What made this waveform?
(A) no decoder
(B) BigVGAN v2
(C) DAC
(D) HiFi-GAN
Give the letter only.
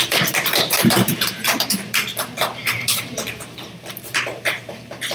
B